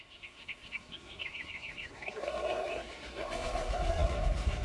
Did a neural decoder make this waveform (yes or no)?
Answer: yes